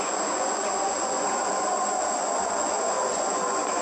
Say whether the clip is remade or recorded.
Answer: remade